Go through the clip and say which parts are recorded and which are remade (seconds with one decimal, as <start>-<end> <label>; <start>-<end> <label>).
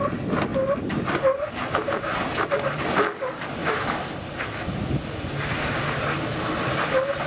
0.0-0.5 recorded; 0.5-2.8 remade; 2.8-7.3 recorded